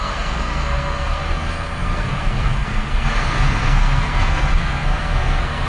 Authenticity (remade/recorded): remade